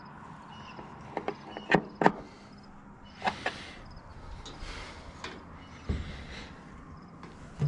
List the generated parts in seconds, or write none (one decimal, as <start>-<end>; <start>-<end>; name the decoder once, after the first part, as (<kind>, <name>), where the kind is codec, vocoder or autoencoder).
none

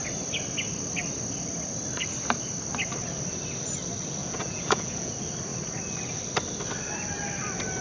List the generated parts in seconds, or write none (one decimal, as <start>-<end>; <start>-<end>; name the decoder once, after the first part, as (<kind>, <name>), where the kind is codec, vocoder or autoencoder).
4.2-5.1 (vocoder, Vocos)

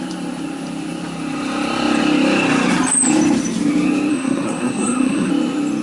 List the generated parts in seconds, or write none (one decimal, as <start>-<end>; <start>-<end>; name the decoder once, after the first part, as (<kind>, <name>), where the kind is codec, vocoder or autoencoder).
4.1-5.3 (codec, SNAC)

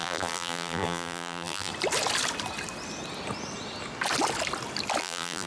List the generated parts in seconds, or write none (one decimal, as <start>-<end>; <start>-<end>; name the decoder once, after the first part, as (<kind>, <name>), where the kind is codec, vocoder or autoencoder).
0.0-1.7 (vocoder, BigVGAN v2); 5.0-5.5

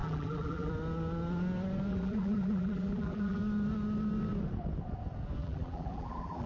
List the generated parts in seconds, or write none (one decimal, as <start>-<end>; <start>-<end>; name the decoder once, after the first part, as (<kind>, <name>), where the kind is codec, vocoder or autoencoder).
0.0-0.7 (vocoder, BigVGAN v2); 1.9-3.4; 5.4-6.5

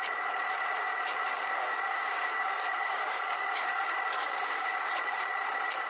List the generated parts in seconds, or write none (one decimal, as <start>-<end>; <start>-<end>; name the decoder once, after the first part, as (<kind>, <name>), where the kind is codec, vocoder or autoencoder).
1.2-4.7 (codec, DAC)

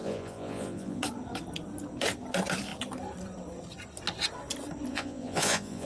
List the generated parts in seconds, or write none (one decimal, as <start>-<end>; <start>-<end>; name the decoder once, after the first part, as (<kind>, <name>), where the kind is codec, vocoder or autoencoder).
0.0-1.0 (vocoder, Vocos); 4.9-5.9

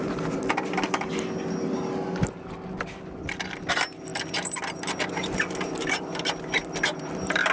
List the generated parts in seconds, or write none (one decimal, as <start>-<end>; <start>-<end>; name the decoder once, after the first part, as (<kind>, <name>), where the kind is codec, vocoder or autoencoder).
none